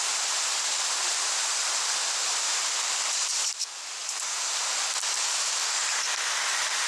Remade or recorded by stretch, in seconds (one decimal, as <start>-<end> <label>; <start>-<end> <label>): 0.0-2.2 recorded; 2.2-3.4 remade; 3.4-4.0 recorded; 4.0-4.9 remade; 4.9-6.9 recorded